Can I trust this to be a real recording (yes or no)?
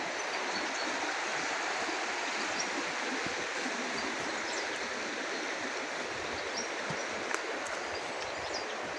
yes